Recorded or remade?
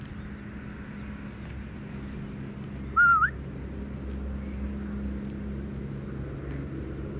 recorded